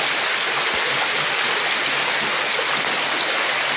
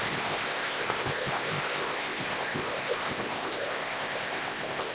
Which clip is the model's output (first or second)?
second